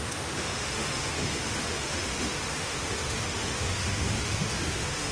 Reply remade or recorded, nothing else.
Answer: remade